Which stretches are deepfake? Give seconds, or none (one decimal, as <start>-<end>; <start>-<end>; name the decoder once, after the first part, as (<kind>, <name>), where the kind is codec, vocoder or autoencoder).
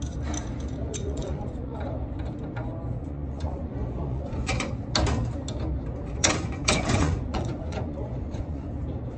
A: 0.9-1.8 (vocoder, Vocos); 3.0-4.7; 6.2-8.7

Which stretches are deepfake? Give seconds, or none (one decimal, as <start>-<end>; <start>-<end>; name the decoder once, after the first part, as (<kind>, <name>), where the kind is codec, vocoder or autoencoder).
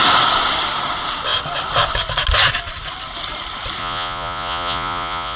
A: 3.8-5.4 (vocoder, Vocos)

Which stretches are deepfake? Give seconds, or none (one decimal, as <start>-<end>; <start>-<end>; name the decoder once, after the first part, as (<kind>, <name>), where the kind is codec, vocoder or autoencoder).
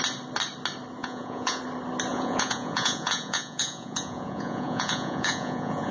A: 1.0-1.6 (vocoder, Vocos); 2.1-5.9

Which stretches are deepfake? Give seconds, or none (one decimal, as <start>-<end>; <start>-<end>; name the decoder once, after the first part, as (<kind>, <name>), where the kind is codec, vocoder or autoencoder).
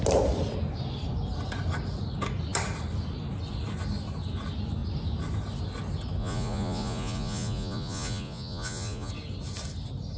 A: 6.2-9.1 (vocoder, Vocos)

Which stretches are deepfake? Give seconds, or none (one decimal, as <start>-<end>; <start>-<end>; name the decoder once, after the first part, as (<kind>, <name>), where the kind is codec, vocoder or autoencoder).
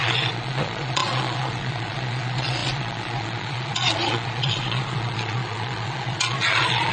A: 0.0-6.9 (vocoder, Vocos)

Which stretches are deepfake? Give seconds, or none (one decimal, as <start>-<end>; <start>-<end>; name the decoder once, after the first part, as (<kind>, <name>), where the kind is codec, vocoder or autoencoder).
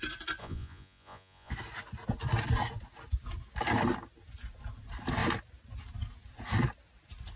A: 0.4-1.5 (vocoder, Vocos)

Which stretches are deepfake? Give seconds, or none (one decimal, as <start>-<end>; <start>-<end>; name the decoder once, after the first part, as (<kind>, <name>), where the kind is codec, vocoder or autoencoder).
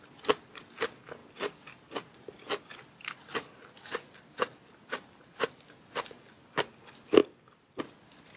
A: none